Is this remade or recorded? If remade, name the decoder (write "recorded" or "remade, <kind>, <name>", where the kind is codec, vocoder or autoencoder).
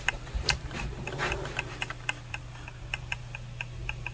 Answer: recorded